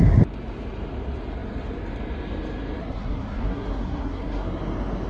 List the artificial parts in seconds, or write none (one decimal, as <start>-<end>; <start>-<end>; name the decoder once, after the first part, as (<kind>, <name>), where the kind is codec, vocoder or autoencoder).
2.8-4.6 (codec, SNAC)